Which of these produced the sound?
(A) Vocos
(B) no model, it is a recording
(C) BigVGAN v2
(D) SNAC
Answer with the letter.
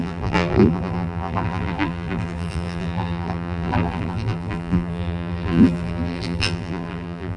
C